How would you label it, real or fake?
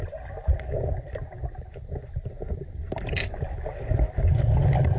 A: real